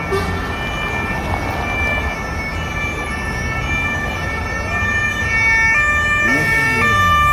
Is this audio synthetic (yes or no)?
no